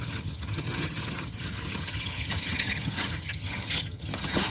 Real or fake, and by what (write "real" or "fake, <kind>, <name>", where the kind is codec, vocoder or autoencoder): fake, vocoder, HiFi-GAN